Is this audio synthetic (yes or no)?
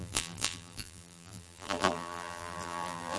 yes